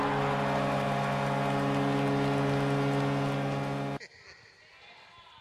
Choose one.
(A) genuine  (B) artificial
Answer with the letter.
A